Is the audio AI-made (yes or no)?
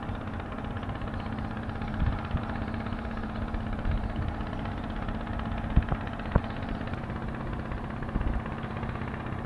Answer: no